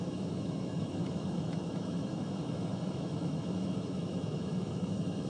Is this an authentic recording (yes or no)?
no